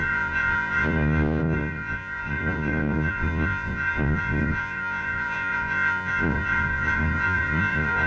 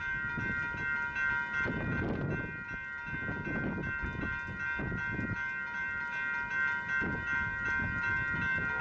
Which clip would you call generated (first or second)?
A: first